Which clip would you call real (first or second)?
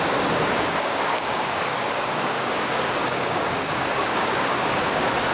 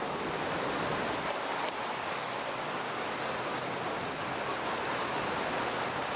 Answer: second